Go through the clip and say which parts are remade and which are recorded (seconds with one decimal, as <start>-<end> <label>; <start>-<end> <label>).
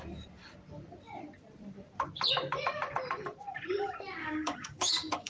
0.0-4.2 recorded; 4.2-5.3 remade